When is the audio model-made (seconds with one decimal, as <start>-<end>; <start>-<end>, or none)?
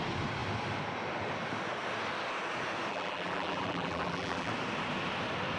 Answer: 2.9-4.5